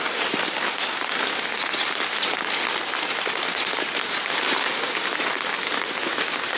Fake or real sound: real